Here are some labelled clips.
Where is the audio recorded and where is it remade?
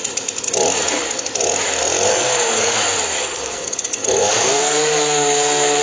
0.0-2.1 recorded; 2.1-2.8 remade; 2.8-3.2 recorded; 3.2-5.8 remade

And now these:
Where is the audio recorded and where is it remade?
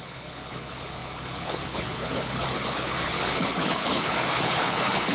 0.0-5.1 remade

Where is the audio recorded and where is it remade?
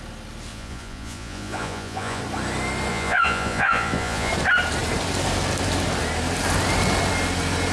0.0-0.5 recorded; 0.5-2.2 remade; 2.2-2.9 recorded; 2.9-4.3 remade; 4.3-7.7 recorded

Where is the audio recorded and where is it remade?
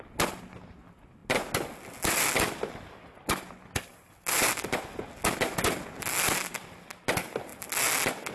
0.0-8.3 recorded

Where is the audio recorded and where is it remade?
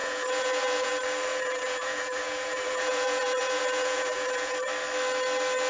0.0-0.9 remade; 0.9-1.3 recorded; 1.3-4.7 remade; 4.7-5.7 recorded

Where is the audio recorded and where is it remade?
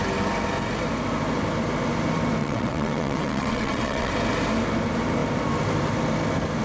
0.0-2.4 recorded; 2.4-4.1 remade; 4.1-6.6 recorded